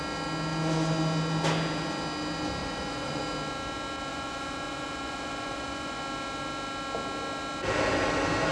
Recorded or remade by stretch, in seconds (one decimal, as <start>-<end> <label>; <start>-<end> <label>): 0.0-2.6 recorded; 2.6-3.2 remade; 3.2-4.1 recorded; 4.1-6.0 remade; 6.0-8.5 recorded